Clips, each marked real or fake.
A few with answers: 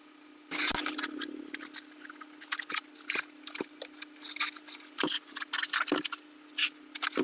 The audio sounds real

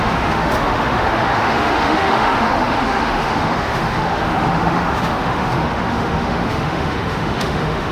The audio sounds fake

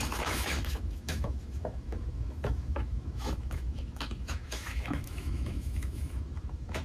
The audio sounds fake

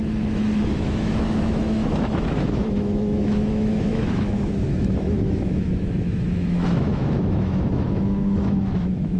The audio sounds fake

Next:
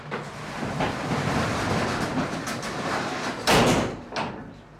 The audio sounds real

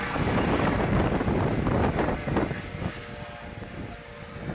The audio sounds real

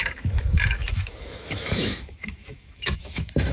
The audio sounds fake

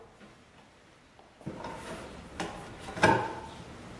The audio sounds real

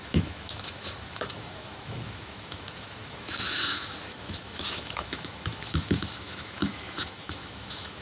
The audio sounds fake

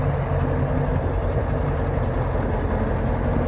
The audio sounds real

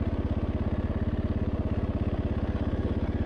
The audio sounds real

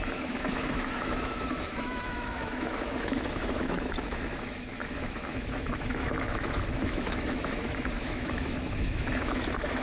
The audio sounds fake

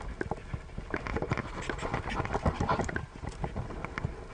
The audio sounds real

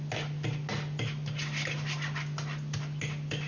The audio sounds real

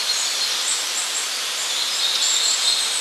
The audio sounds real